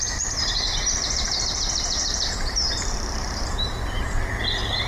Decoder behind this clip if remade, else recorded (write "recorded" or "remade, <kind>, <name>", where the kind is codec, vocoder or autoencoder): remade, vocoder, BigVGAN v2